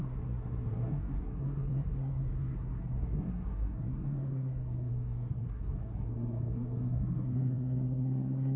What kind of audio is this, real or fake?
fake